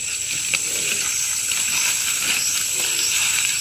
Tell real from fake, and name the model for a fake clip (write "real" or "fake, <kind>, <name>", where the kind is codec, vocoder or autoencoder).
fake, vocoder, BigVGAN v2